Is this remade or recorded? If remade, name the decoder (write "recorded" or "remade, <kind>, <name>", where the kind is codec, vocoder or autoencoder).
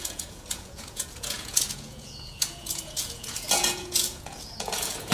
remade, vocoder, Vocos